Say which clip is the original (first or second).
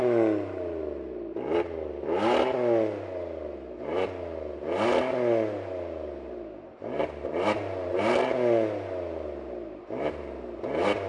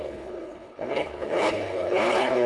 first